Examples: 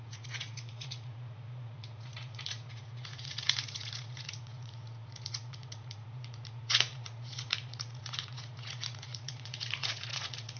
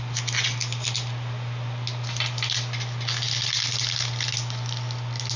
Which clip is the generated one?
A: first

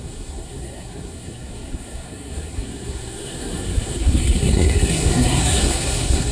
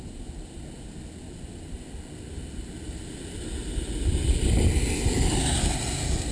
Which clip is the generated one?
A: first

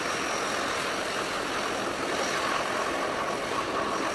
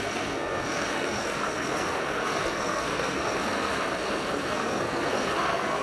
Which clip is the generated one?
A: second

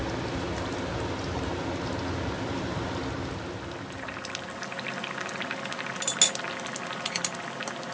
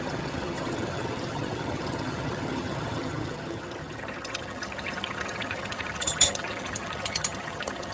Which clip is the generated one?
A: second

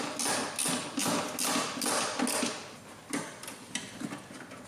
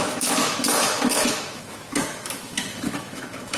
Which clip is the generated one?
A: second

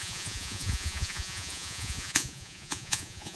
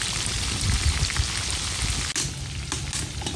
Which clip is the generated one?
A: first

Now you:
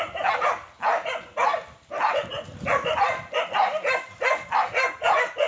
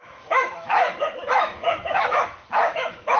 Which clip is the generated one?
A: second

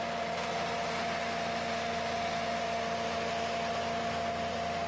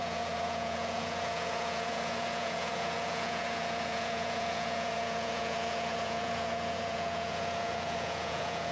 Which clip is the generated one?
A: second